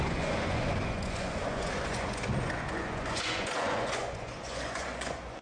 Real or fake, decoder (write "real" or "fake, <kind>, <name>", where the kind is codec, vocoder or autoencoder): fake, vocoder, Vocos